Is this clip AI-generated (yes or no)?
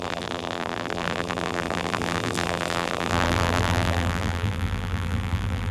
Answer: yes